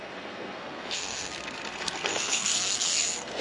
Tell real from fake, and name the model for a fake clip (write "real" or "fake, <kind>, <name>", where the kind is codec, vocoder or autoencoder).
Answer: fake, codec, SNAC